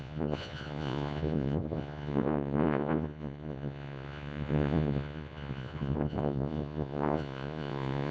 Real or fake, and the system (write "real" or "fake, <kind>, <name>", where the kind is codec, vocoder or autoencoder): fake, vocoder, Vocos